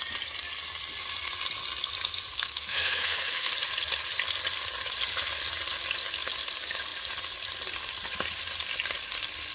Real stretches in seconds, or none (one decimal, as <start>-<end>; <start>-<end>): 0.0-2.3; 3.5-9.5